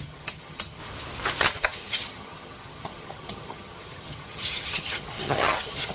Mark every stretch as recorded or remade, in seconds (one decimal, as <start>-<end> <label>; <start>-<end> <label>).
0.0-0.8 remade; 0.8-1.4 recorded; 1.4-5.9 remade